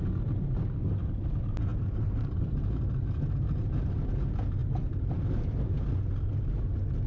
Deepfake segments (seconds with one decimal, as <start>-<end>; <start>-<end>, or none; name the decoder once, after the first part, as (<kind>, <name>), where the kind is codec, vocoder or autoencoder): 1.7-2.8 (vocoder, BigVGAN v2)